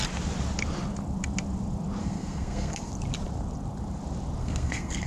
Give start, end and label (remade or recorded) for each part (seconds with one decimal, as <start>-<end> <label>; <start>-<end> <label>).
0.0-2.0 recorded; 2.0-2.9 remade; 2.9-4.4 recorded; 4.4-5.1 remade